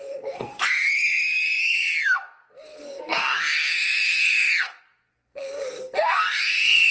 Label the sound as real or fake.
fake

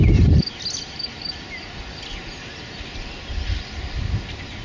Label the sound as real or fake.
real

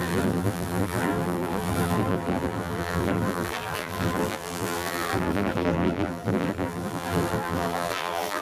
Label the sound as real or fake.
fake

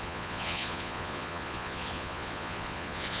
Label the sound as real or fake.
fake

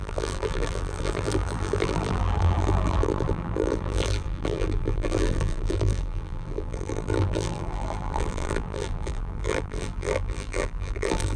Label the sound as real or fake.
fake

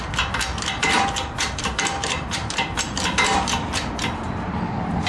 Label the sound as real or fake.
fake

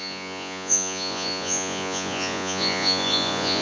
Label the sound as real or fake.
fake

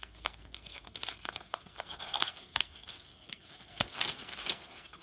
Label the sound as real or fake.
fake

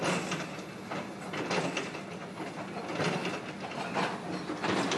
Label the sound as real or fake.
real